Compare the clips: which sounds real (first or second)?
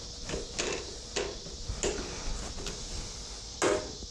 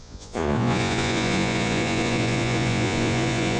first